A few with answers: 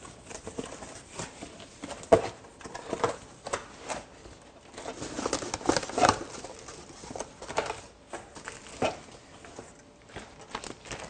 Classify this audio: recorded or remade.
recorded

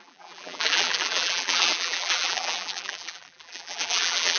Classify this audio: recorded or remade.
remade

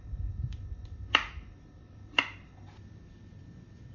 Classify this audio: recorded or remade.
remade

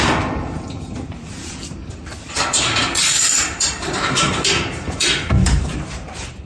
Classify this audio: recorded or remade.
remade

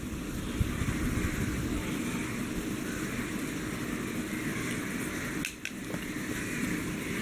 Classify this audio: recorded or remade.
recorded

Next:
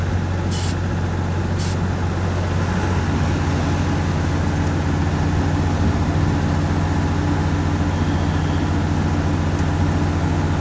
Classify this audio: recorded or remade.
recorded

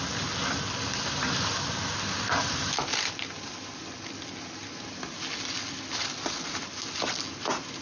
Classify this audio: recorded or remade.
recorded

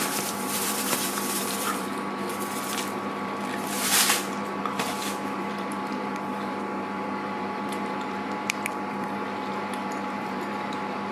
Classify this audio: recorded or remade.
remade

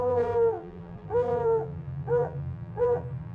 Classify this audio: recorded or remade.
remade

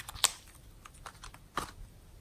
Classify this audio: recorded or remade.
recorded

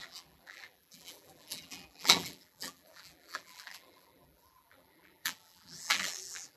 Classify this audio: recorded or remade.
remade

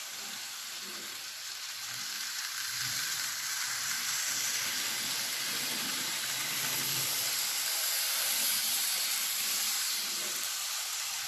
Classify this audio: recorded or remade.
remade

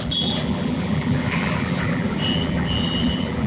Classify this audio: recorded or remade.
remade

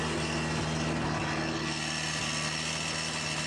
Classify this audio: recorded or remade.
recorded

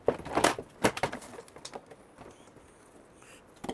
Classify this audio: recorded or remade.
recorded